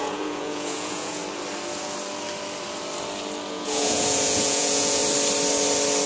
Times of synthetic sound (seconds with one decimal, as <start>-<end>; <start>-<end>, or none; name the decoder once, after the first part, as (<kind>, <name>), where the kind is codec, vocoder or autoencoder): 0.0-1.2 (vocoder, Vocos); 3.5-5.0